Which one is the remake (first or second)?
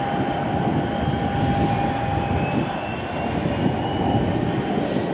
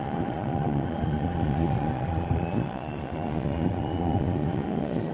second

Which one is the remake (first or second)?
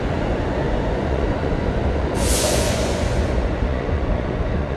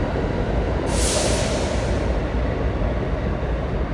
first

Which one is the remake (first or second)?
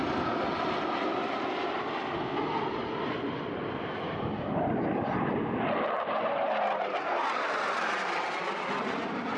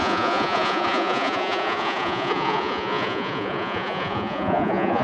second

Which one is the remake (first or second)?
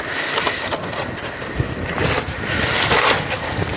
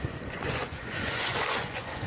second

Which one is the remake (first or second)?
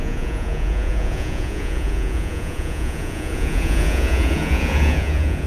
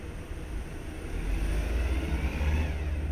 first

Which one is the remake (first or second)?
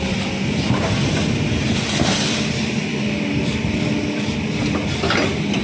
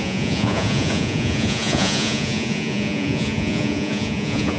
second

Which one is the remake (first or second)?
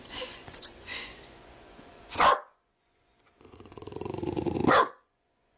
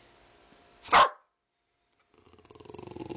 first